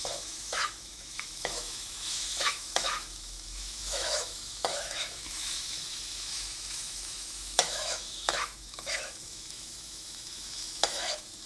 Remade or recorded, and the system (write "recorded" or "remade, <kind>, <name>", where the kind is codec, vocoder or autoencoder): remade, autoencoder, DAC-VAE